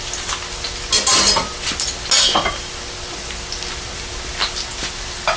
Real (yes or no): yes